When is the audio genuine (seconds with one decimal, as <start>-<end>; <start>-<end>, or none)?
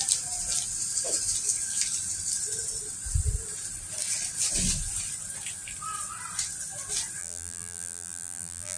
0.0-7.2